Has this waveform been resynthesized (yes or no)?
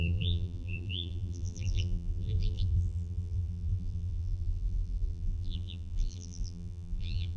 yes